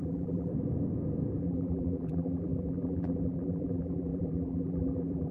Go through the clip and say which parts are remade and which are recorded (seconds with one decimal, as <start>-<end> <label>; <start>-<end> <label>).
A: 0.0-0.5 remade; 0.5-1.4 recorded; 1.4-5.3 remade